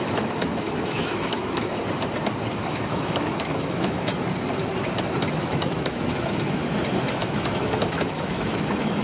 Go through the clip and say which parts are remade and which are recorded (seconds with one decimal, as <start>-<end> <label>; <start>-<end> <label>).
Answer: 0.0-1.8 remade; 1.8-2.5 recorded; 2.5-4.1 remade; 4.1-5.3 recorded; 5.3-6.6 remade; 6.6-7.2 recorded; 7.2-9.0 remade